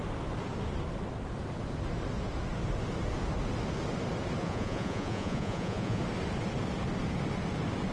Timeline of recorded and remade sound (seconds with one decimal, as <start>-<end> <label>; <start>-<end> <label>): 0.0-4.4 recorded; 4.4-6.0 remade; 6.0-7.9 recorded